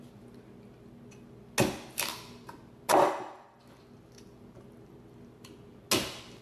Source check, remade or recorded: recorded